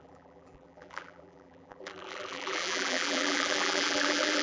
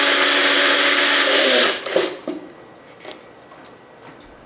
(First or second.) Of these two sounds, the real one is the second